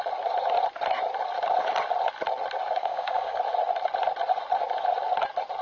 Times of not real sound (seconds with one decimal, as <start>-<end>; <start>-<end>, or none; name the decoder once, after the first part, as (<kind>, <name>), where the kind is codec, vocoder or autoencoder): 2.8-3.4 (codec, DAC)